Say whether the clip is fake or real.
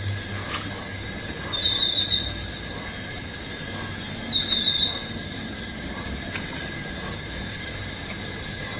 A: real